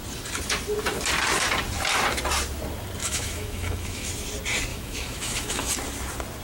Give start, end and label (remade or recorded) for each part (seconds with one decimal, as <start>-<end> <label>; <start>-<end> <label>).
0.0-3.0 recorded; 3.0-4.1 remade; 4.1-4.7 recorded; 4.7-5.7 remade; 5.7-6.4 recorded